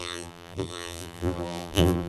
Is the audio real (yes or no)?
no